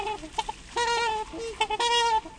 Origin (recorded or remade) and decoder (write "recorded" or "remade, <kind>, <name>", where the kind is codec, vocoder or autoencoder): recorded